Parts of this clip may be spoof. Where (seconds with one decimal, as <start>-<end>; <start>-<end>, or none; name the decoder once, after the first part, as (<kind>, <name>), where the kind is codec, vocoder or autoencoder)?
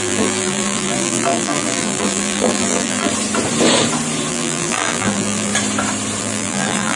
0.0-3.1 (vocoder, BigVGAN v2); 4.3-5.5; 6.2-7.0